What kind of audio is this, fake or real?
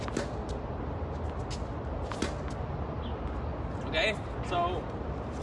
real